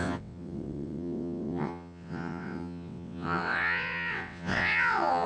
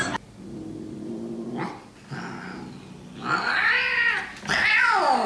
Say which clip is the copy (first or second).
first